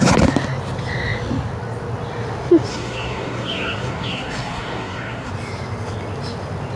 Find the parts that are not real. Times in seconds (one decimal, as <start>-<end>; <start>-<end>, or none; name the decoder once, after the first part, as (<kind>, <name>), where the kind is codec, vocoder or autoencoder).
2.7-5.3 (codec, SNAC)

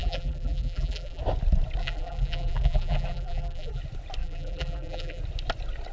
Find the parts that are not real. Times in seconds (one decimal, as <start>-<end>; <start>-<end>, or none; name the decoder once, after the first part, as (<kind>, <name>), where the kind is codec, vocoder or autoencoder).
0.0-1.2 (vocoder, BigVGAN v2); 1.8-3.8; 4.2-5.2

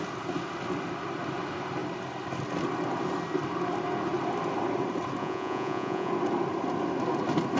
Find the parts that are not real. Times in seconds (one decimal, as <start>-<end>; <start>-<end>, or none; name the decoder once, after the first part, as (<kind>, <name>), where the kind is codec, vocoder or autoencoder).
5.2-6.1 (vocoder, Vocos)